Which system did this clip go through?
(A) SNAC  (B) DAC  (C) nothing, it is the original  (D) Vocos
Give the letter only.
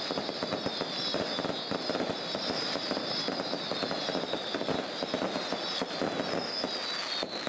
C